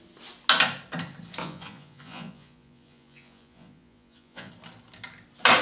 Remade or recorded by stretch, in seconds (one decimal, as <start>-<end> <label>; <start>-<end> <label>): 0.0-1.4 recorded; 1.4-4.5 remade; 4.5-5.6 recorded